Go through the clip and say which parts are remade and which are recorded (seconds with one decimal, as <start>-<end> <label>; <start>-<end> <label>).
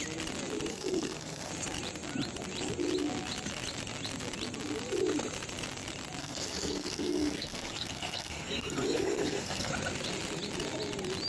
0.0-0.7 recorded; 0.7-1.5 remade; 1.5-6.2 recorded; 6.2-9.7 remade; 9.7-11.3 recorded